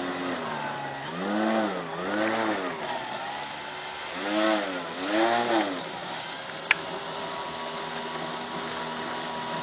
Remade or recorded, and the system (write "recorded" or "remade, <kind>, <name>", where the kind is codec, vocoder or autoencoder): recorded